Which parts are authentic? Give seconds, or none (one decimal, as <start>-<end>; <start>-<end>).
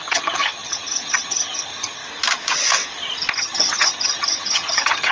2.0-3.3